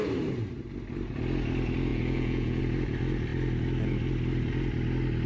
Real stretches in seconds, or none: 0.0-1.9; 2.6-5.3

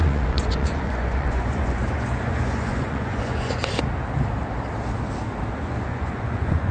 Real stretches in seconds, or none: 3.6-5.5

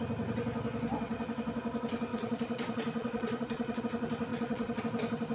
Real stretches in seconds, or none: 0.0-2.1; 3.8-4.3; 4.8-5.3

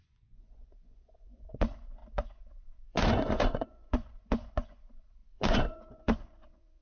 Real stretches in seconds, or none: none

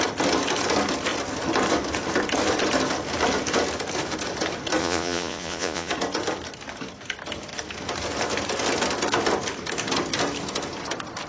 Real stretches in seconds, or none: 0.0-4.8; 5.9-11.3

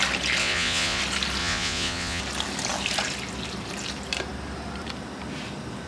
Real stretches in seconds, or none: 0.0-0.4; 1.0-1.4; 2.2-5.9

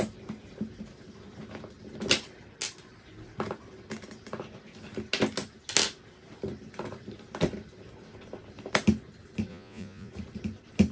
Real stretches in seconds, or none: 0.0-9.5; 10.1-10.9

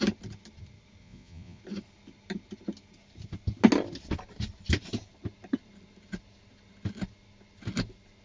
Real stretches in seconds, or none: 0.0-1.0; 1.6-8.2